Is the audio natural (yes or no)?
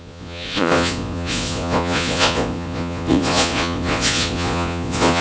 no